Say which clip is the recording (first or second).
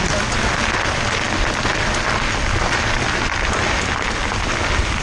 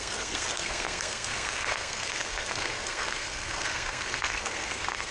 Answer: first